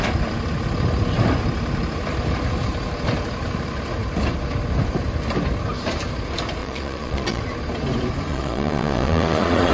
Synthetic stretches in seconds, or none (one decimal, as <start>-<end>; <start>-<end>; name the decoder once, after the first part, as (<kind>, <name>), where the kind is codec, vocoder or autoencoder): 6.6-7.4 (vocoder, Vocos); 8.3-9.7